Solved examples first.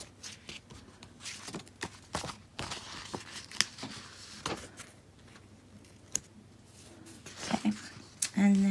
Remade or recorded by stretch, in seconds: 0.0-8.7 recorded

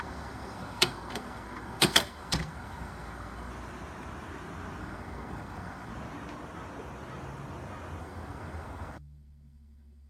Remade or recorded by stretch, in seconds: 0.0-3.5 remade; 3.5-4.8 recorded; 4.8-5.9 remade; 5.9-8.0 recorded; 8.0-10.1 remade

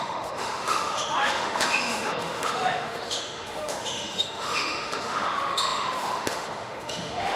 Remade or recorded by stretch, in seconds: 0.0-7.4 remade

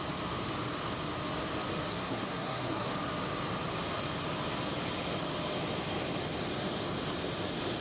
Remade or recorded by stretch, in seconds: 0.0-1.9 recorded; 1.9-2.9 remade; 2.9-7.8 recorded

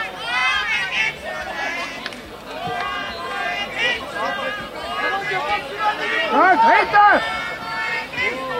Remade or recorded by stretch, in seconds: 0.0-8.6 recorded

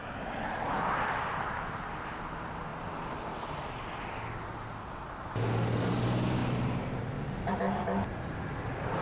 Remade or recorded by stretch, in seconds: 0.0-1.9 remade; 1.9-6.4 recorded; 6.4-7.2 remade; 7.2-9.0 recorded